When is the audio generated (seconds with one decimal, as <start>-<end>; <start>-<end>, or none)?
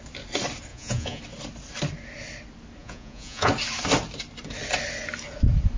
0.7-1.2; 2.8-3.5